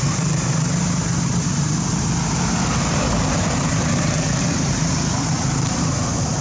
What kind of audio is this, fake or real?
fake